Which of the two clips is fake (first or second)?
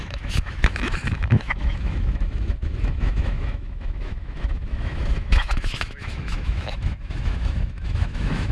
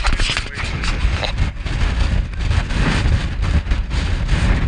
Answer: first